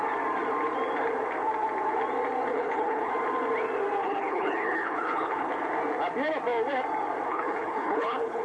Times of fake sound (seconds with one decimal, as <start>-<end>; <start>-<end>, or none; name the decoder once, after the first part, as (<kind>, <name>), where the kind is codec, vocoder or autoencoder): 2.5-3.1 (codec, HILCodec); 4.0-5.5; 7.3-8.4